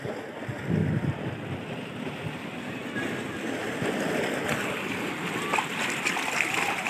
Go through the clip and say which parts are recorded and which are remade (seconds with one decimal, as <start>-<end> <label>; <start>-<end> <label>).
0.0-6.9 recorded